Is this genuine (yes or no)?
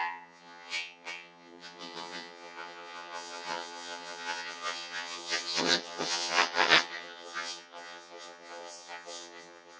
no